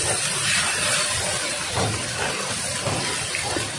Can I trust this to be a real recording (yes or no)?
yes